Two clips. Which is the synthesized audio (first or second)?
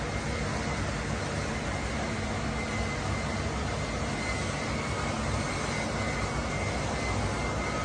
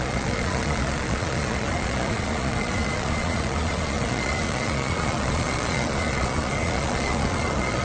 second